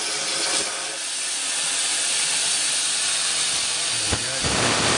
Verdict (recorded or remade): recorded